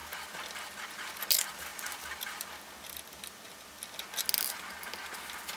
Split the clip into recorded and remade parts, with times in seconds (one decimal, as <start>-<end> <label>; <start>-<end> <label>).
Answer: 0.0-5.6 recorded